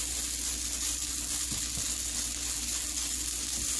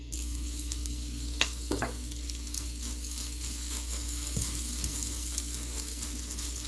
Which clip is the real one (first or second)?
first